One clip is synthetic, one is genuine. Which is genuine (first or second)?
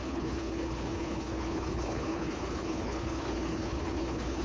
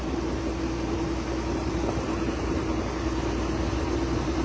second